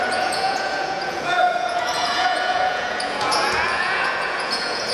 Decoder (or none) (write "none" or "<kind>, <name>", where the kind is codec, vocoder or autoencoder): vocoder, Vocos